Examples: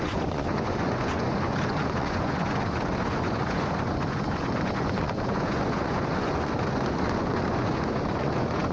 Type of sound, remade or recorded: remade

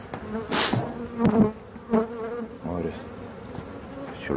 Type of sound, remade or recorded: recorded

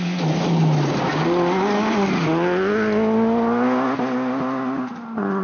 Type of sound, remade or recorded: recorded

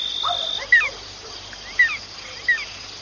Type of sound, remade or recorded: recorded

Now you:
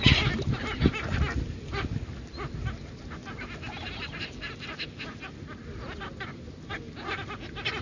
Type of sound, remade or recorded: recorded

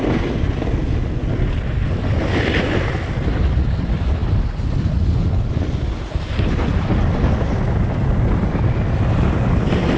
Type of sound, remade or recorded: recorded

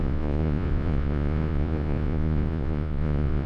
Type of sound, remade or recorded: remade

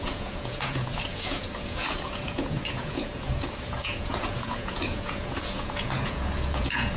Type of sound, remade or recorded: remade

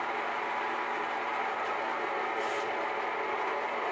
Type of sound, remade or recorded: recorded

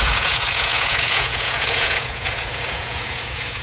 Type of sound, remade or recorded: remade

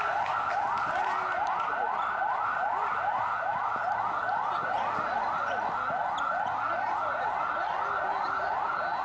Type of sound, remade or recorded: recorded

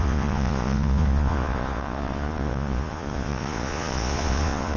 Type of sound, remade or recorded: remade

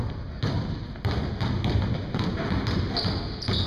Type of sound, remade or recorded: recorded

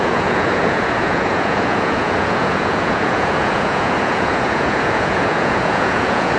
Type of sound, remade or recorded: remade